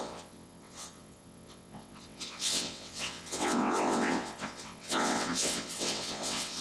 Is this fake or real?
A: fake